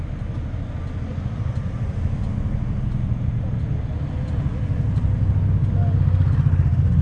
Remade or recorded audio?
recorded